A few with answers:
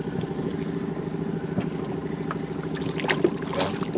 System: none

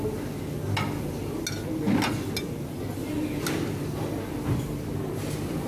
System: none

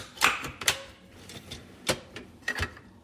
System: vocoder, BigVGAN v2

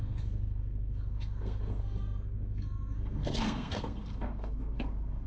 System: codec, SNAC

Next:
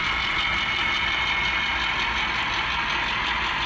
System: none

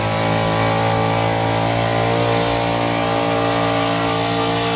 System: none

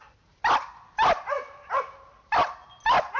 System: none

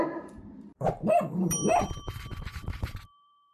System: vocoder, BigVGAN v2